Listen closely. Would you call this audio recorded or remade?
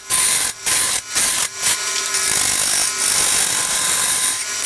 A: recorded